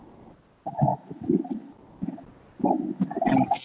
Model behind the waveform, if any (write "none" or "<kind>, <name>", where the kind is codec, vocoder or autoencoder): none